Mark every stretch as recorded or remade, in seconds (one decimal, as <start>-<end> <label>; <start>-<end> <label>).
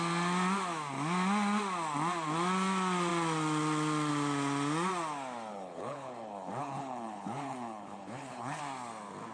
0.0-5.5 recorded; 5.5-8.6 remade; 8.6-9.3 recorded